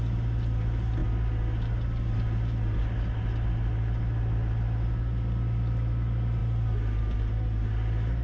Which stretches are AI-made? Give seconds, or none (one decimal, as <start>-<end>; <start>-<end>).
none